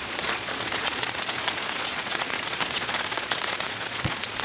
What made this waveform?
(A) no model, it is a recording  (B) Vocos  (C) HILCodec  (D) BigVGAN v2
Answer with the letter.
B